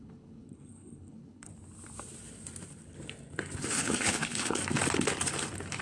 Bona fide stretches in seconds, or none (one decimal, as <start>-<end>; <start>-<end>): 1.5-3.6; 4.6-5.8